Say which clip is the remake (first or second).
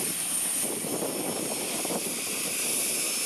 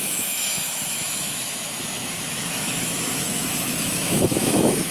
second